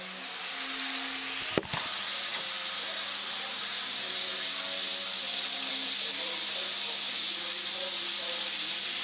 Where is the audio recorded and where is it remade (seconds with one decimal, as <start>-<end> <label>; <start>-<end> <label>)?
0.0-9.0 recorded